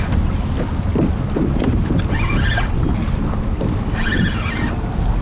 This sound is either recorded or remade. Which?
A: recorded